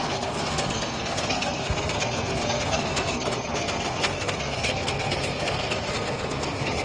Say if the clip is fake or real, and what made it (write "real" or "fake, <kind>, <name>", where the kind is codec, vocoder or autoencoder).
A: fake, codec, SNAC